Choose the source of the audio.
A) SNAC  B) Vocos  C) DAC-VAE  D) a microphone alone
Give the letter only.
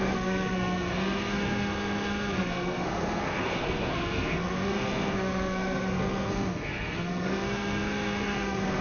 A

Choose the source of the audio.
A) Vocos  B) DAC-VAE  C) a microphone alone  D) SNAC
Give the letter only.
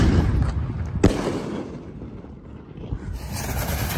C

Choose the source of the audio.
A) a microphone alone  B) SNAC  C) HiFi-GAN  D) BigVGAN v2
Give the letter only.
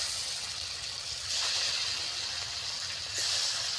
A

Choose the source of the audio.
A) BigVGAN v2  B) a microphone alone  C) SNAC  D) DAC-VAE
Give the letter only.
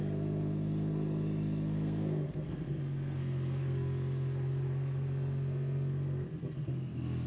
C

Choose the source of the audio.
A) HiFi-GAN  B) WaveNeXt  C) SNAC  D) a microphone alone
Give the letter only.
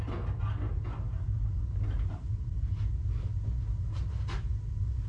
D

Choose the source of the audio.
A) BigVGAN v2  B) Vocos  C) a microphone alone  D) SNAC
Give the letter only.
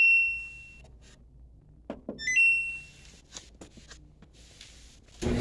C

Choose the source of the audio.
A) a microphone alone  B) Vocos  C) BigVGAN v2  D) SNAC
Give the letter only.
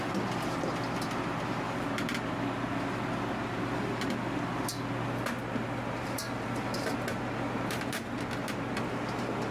A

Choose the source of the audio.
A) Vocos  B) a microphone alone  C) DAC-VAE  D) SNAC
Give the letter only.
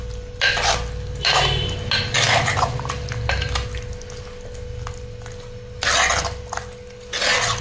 B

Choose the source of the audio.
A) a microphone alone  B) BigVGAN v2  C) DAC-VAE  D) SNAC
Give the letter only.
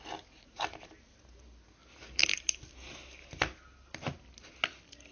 A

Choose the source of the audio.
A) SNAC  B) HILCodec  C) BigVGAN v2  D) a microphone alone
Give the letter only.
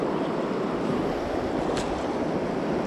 D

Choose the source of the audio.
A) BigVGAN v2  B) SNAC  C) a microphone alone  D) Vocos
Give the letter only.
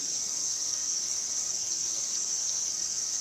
B